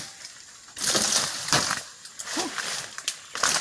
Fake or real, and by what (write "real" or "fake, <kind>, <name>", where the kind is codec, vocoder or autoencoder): real